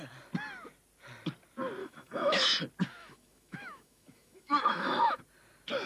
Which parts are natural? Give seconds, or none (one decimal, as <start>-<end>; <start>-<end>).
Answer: 0.0-1.8; 2.4-3.0; 5.2-5.9